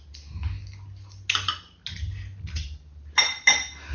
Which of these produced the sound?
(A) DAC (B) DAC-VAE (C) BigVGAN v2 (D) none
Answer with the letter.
D